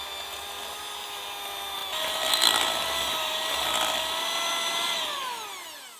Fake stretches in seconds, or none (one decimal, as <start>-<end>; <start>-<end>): none